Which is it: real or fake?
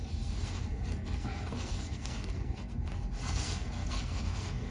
fake